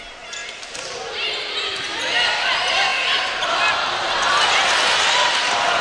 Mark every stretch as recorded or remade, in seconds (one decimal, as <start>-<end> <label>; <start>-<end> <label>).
0.0-0.4 recorded; 0.4-1.1 remade; 1.1-5.8 recorded